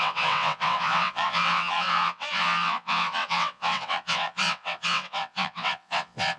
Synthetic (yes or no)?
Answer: yes